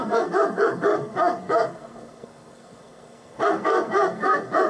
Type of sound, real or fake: fake